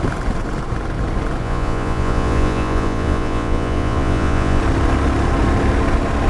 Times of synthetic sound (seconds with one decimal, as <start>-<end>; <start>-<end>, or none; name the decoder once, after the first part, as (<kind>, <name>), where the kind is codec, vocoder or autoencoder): 1.4-4.6 (vocoder, Vocos)

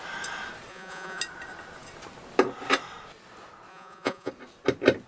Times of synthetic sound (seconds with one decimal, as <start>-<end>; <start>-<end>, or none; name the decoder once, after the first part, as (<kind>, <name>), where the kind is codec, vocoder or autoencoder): 0.7-1.2 (vocoder, Vocos); 3.7-4.3

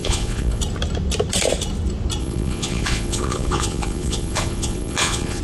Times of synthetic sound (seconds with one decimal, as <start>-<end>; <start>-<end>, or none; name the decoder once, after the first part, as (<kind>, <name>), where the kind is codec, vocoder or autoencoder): 0.0-0.6 (vocoder, Vocos); 2.2-5.4